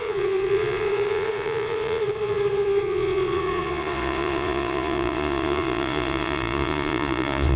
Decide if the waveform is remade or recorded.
remade